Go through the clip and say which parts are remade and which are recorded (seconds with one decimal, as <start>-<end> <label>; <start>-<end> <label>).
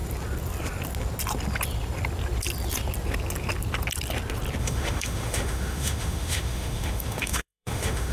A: 0.0-4.6 recorded; 4.6-8.1 remade